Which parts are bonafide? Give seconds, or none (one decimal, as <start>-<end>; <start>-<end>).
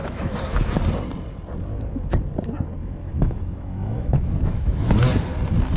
0.7-2.8; 4.9-5.8